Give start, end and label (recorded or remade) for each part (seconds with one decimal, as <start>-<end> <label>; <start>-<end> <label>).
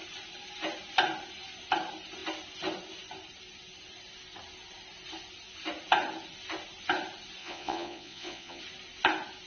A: 0.0-7.4 recorded; 7.4-8.6 remade; 8.6-9.5 recorded